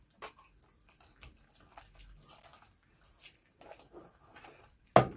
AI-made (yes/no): no